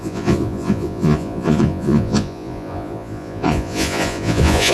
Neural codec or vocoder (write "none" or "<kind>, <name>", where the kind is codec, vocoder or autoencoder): vocoder, Vocos